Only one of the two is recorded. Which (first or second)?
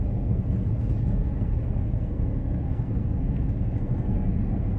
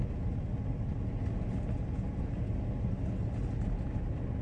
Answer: second